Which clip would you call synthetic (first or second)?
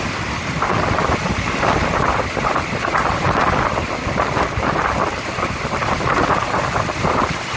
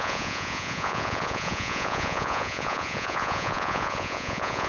second